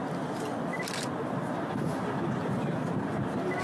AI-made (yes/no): no